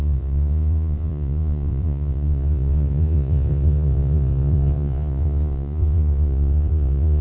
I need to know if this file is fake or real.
fake